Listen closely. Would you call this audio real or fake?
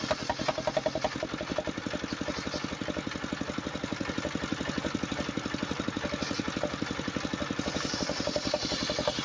real